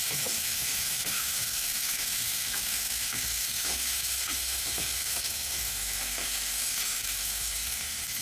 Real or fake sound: fake